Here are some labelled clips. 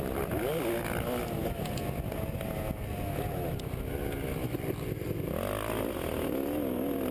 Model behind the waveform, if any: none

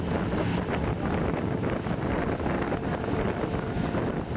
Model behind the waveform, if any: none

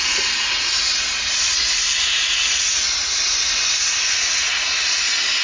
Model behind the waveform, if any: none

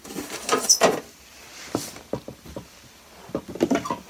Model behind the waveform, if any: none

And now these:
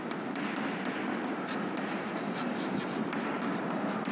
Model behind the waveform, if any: none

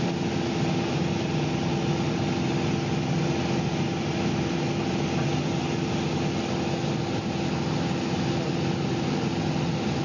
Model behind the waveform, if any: none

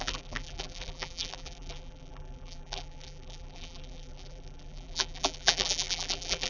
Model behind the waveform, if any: vocoder, BigVGAN v2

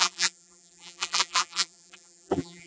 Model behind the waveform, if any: vocoder, BigVGAN v2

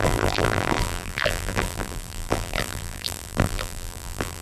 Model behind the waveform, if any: vocoder, BigVGAN v2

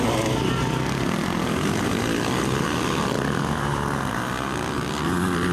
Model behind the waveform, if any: none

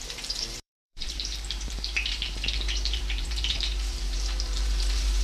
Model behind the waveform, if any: vocoder, BigVGAN v2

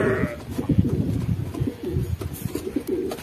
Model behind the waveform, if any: none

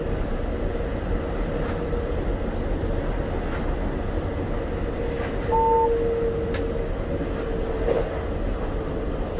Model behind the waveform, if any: none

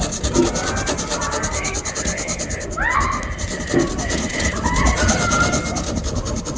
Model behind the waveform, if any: none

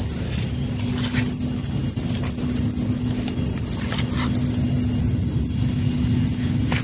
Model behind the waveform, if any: none